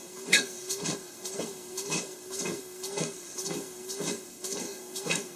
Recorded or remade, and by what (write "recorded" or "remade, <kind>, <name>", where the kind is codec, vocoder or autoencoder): remade, codec, SNAC